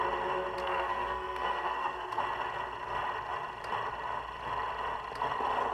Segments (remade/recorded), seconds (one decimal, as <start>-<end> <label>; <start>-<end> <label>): 0.0-0.6 recorded; 0.6-2.2 remade; 2.2-5.7 recorded